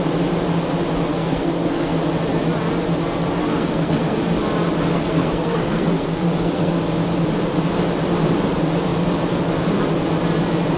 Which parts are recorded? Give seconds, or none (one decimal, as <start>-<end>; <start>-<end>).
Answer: 0.0-1.1; 2.0-3.4; 4.2-4.9; 6.8-10.8